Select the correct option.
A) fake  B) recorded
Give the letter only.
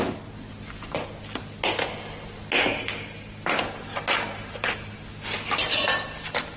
B